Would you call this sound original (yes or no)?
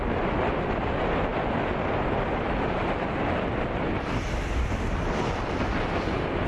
yes